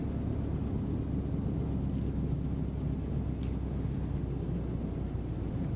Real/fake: real